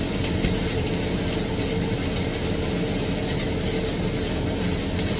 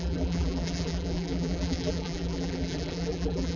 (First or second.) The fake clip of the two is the second